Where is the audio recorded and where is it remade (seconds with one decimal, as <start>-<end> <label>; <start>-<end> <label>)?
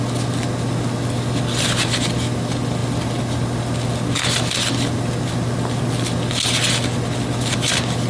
0.0-8.1 recorded